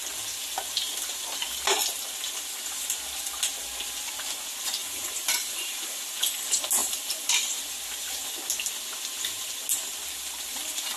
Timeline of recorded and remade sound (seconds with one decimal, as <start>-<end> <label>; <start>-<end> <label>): 0.0-4.8 recorded; 4.8-6.0 remade; 6.0-6.8 recorded; 6.8-7.6 remade; 7.6-11.0 recorded